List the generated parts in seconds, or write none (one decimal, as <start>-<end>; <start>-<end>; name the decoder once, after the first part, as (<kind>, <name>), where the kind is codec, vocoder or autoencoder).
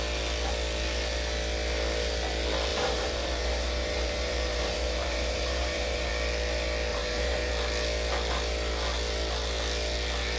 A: 2.7-6.1 (vocoder, BigVGAN v2); 6.9-7.5